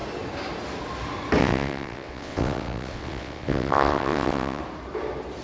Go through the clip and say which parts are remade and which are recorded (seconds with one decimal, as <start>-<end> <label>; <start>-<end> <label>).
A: 0.0-1.4 recorded; 1.4-4.6 remade; 4.6-5.4 recorded